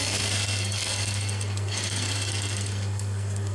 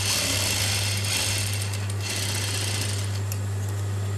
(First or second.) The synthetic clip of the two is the first